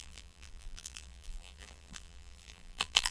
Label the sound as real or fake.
fake